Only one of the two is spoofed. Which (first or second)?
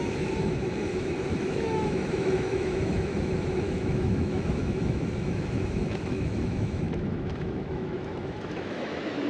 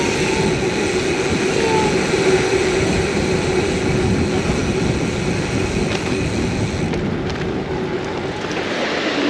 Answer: first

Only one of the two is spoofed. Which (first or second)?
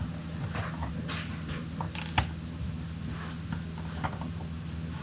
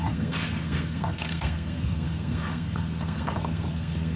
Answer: second